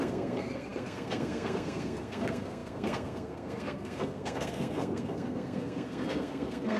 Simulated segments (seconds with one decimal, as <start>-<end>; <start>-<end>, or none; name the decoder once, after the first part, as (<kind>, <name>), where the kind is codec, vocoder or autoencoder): 0.0-6.8 (codec, SNAC)